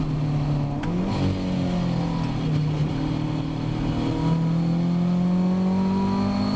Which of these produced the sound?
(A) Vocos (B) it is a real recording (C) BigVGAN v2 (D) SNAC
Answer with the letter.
B